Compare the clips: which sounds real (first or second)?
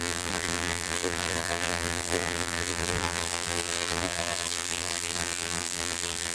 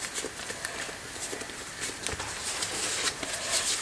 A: second